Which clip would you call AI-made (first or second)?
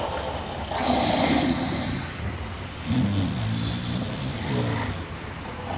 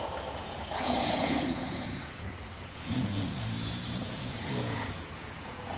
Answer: second